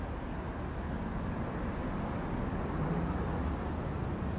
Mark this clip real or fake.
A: real